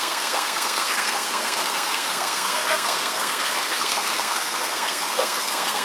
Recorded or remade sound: remade